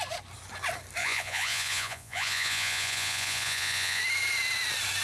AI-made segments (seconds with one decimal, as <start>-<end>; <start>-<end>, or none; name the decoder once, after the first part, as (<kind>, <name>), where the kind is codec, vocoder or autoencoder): 1.0-4.0 (vocoder, Vocos)